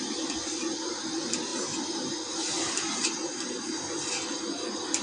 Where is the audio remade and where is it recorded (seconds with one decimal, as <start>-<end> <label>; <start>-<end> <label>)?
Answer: 0.0-5.0 recorded